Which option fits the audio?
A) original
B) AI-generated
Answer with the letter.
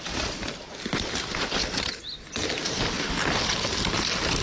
A